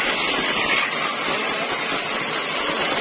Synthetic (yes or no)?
no